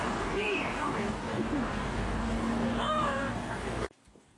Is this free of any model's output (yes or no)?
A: no